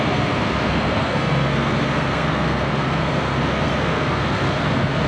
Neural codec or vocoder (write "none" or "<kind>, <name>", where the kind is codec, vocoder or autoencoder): codec, SNAC